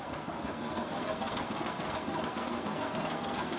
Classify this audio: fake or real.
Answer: fake